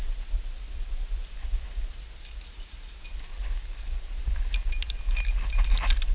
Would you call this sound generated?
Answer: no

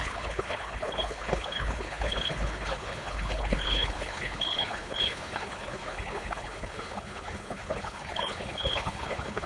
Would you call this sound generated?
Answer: yes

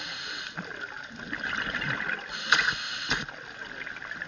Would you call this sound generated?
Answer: no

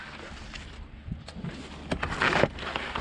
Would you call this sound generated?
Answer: no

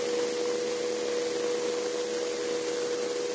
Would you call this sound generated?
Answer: no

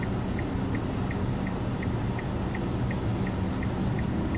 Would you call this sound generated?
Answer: no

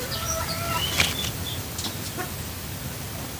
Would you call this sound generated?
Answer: yes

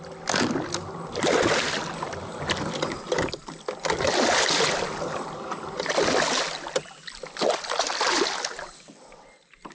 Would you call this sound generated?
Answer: no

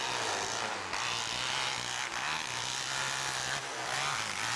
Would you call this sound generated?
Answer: no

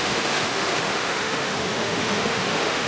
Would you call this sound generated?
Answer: yes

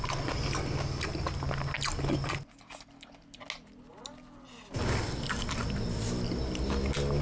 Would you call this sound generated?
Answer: no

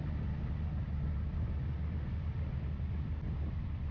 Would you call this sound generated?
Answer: no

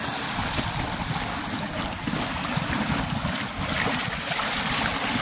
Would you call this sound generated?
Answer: no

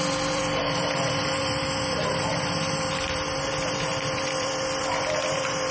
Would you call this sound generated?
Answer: yes